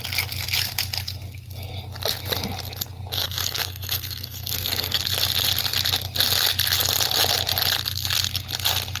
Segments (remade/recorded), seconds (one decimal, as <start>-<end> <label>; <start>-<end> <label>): 0.0-3.1 recorded; 3.1-5.0 remade; 5.0-9.0 recorded

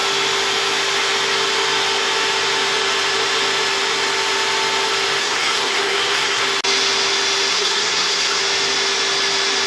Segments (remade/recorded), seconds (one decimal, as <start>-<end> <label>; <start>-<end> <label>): 0.0-5.2 recorded; 5.2-6.4 remade; 6.4-7.5 recorded; 7.5-8.4 remade; 8.4-9.7 recorded

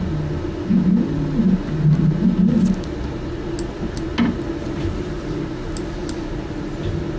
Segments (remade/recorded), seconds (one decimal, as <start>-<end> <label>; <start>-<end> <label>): 0.0-7.2 recorded

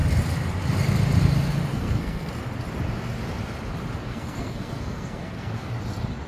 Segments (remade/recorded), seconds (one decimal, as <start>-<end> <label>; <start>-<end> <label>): 0.0-1.7 recorded; 1.7-2.3 remade; 2.3-4.1 recorded; 4.1-5.7 remade; 5.7-6.3 recorded

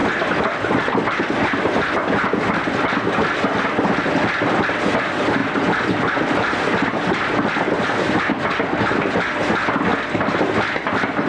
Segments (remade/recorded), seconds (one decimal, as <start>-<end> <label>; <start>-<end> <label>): 0.0-11.3 recorded

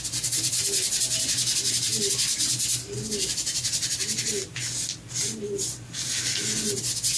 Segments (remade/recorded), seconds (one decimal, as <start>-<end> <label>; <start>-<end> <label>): 0.0-7.2 recorded